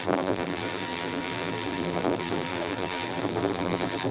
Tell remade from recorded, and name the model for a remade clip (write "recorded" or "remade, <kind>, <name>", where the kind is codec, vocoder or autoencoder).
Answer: remade, vocoder, BigVGAN v2